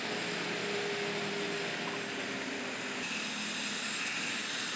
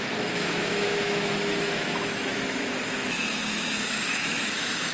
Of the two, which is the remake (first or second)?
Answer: second